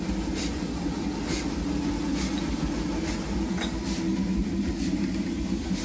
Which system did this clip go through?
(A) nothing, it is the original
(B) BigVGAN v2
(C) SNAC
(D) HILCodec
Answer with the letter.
A